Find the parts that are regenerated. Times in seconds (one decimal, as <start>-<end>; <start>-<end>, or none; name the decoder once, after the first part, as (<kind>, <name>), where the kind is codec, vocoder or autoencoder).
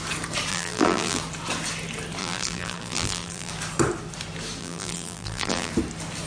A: 0.5-1.2 (vocoder, BigVGAN v2); 2.2-3.5; 4.6-5.7